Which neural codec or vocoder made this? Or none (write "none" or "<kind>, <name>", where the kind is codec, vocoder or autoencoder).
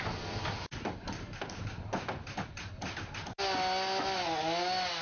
none